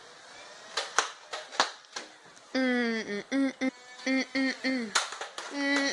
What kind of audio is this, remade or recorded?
recorded